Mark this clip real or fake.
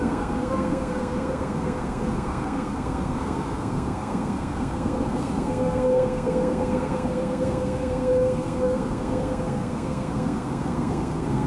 fake